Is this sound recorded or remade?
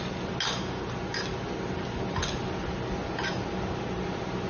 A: recorded